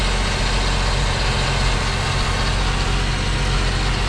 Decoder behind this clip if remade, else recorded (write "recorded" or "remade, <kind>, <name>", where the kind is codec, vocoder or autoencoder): recorded